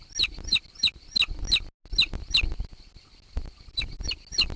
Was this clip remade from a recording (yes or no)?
no